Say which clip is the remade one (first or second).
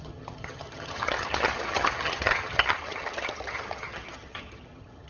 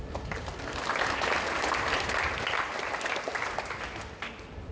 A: first